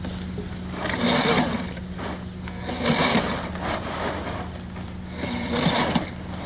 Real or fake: real